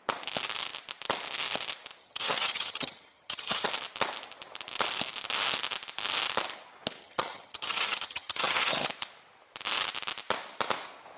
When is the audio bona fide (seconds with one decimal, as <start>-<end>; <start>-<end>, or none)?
0.0-2.0; 3.7-7.0; 8.9-11.2